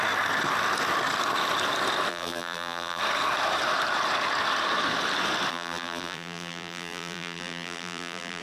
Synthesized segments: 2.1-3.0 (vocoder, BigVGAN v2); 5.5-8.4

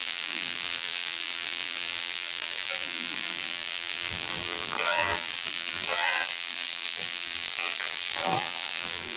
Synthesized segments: 0.0-9.2 (vocoder, BigVGAN v2)

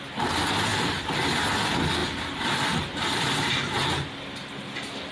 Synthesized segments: 0.7-1.2 (vocoder, BigVGAN v2); 2.0-5.1

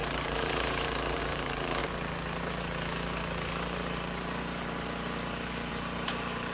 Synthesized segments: 0.0-1.8 (vocoder, BigVGAN v2); 5.7-6.5

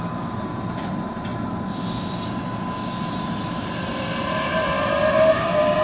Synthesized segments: 0.0-1.3 (vocoder, BigVGAN v2); 3.1-5.8

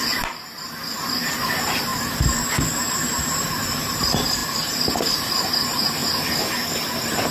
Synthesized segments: 0.0-1.9 (vocoder, BigVGAN v2); 2.9-6.0